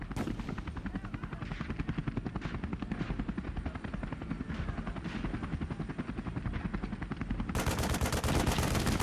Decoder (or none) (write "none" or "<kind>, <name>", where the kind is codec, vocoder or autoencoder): none